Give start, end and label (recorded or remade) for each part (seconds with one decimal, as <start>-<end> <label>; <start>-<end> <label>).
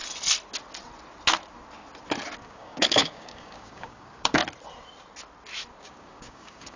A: 0.0-2.4 recorded; 2.4-4.4 remade; 4.4-5.8 recorded; 5.8-6.8 remade